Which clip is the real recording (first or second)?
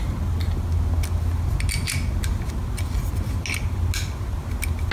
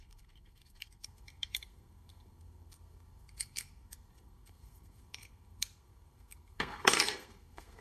first